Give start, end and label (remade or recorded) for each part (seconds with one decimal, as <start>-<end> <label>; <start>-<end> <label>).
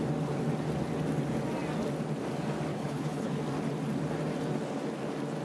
0.0-2.7 recorded; 2.7-3.4 remade; 3.4-5.4 recorded